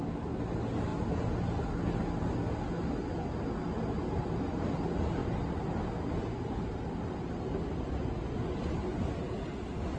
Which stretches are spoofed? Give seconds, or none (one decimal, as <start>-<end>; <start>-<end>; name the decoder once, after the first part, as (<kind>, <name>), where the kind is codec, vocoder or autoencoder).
none